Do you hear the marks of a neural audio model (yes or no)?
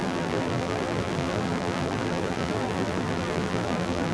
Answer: yes